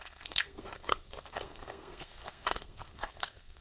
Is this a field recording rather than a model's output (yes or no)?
no